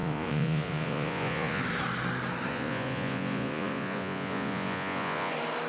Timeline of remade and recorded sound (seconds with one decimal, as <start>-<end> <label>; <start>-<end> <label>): 0.0-1.6 remade; 1.6-2.5 recorded; 2.5-5.3 remade; 5.3-5.7 recorded